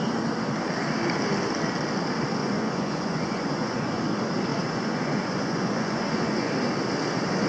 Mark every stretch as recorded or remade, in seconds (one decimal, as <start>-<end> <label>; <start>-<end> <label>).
0.0-2.4 recorded; 2.4-4.0 remade; 4.0-4.5 recorded; 4.5-6.5 remade; 6.5-7.5 recorded